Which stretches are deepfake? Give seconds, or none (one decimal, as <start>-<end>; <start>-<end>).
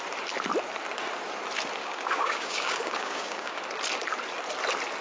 1.8-3.6